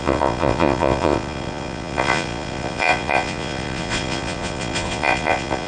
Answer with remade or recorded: remade